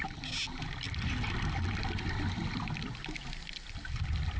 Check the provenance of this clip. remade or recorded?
recorded